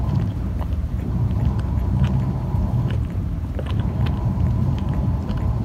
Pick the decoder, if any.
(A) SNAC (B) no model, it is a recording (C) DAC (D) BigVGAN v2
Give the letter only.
D